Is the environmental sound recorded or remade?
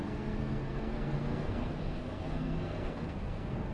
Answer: remade